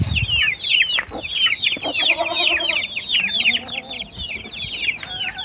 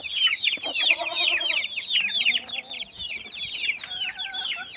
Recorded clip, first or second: first